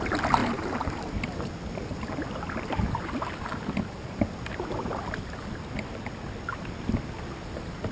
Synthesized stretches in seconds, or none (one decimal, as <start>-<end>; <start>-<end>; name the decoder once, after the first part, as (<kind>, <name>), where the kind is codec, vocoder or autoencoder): none